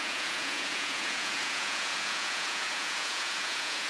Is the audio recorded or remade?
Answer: remade